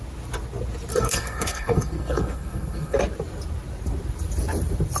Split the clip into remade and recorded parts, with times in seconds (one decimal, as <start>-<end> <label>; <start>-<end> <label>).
0.0-0.9 recorded; 0.9-3.0 remade; 3.0-5.0 recorded